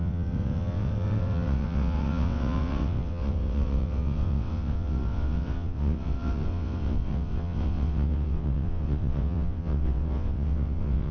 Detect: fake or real fake